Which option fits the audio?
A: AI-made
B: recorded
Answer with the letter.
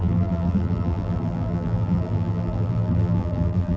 A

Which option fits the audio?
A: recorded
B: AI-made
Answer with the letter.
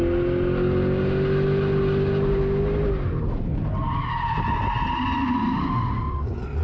A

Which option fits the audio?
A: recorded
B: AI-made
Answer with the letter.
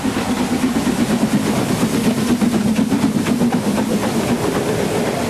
A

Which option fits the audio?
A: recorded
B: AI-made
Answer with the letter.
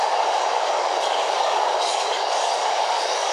B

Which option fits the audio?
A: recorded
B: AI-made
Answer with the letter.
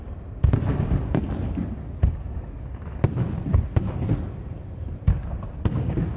A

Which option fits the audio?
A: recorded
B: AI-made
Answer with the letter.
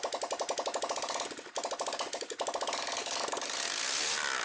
A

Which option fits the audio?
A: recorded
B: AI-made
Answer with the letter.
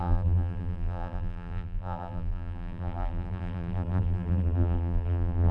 B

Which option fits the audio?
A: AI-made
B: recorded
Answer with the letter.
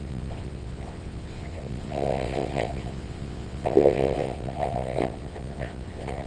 A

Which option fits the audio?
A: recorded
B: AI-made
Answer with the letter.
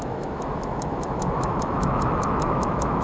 B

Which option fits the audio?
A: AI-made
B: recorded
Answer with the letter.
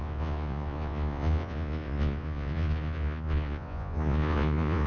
A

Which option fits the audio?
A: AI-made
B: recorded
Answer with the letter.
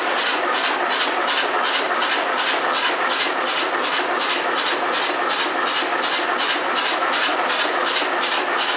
B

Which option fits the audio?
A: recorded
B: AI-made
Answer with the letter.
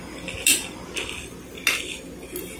A